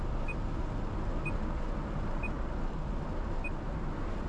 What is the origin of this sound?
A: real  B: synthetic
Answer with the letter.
A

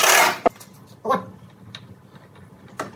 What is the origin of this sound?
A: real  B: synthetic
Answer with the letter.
A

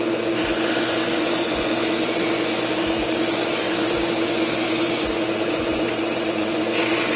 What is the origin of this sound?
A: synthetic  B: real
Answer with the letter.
A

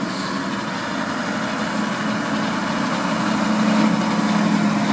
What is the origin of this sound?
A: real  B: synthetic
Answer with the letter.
A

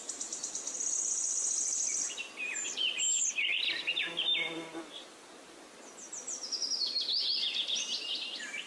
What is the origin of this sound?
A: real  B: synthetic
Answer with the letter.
A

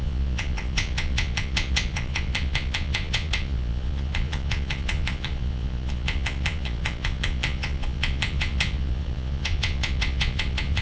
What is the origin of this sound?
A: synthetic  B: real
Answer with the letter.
A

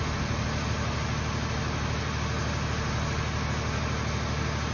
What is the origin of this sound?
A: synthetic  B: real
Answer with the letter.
B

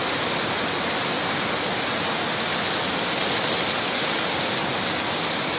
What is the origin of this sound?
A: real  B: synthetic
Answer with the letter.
A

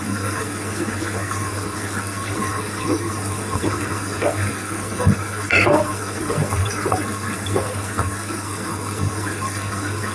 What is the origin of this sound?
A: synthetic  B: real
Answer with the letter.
A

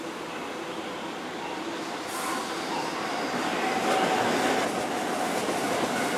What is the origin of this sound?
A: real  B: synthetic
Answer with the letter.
A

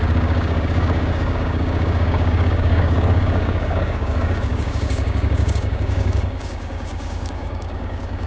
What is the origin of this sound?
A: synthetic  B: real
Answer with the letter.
A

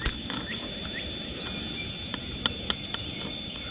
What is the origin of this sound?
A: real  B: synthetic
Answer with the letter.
A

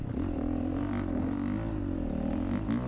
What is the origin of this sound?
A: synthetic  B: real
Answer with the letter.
B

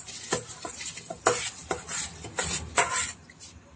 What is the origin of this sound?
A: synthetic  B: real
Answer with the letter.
B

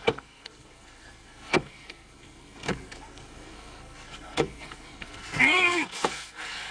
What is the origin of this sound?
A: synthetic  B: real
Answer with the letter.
A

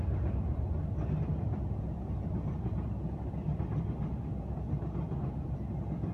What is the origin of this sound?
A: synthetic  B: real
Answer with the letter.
B